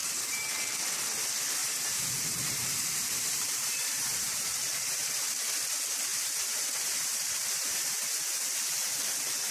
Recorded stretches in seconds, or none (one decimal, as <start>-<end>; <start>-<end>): 0.6-1.6; 5.3-6.1; 8.5-9.5